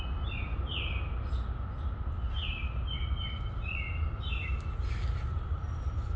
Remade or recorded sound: recorded